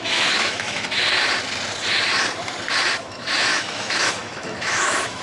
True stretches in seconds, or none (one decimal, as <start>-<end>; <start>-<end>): 1.0-3.0